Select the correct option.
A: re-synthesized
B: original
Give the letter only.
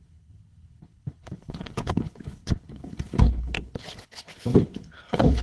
A